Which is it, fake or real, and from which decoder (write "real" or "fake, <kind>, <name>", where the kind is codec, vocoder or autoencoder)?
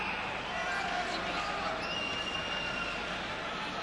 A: real